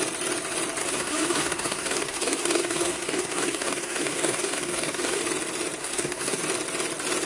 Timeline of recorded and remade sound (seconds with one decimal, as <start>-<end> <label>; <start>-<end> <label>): 0.0-0.8 recorded; 0.8-5.2 remade; 5.2-5.8 recorded; 5.8-6.4 remade; 6.4-7.3 recorded